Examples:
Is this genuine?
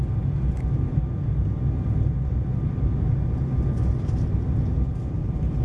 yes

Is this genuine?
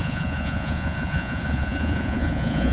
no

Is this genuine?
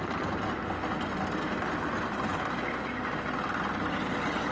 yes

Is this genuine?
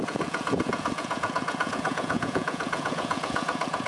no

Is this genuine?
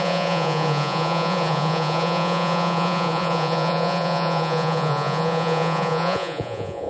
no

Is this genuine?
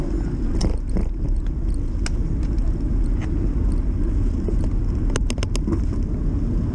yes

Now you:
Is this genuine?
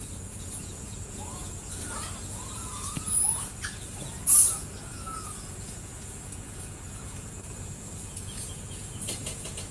no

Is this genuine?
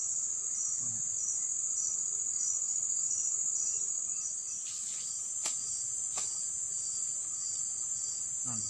yes